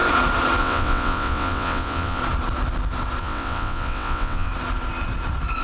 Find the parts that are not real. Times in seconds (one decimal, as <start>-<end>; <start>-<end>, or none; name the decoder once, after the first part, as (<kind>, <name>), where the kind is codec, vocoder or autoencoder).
0.6-2.2 (vocoder, WaveNeXt); 3.2-4.5